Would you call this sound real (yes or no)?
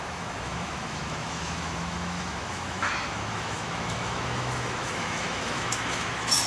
no